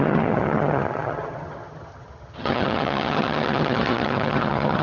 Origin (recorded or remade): remade